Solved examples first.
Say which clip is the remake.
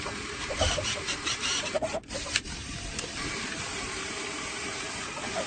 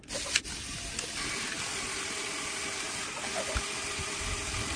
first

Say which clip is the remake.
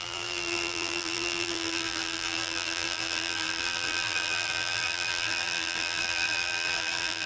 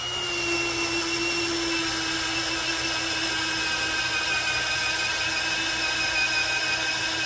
first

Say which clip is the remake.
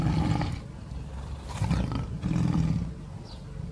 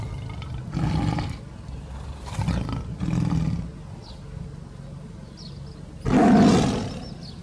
first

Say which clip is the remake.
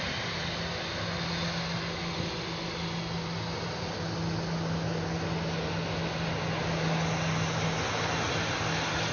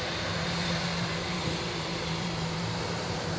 second